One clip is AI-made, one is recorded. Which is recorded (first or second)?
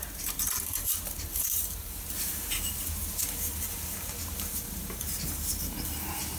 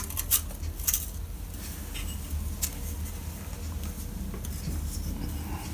second